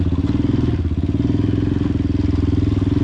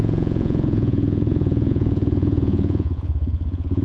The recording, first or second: first